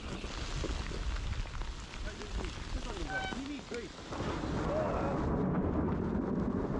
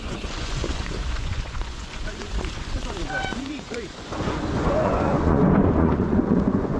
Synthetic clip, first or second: second